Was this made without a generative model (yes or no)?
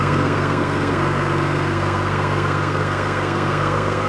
no